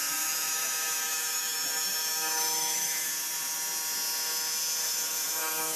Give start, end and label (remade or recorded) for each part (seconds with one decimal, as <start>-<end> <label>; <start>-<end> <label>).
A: 0.0-3.1 remade; 3.1-4.8 recorded; 4.8-5.8 remade